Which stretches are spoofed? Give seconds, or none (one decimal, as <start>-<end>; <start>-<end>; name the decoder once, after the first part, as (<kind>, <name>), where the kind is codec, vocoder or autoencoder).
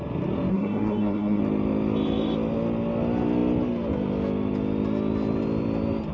0.5-1.4 (codec, SNAC)